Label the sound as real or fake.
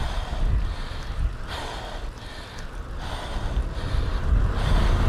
real